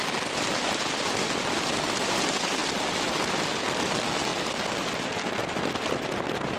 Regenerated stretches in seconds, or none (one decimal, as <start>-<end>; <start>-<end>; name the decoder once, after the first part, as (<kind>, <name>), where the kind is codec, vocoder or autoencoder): none